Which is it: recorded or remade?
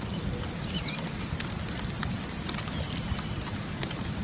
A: recorded